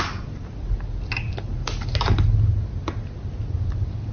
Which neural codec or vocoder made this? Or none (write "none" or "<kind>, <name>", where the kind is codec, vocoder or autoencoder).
none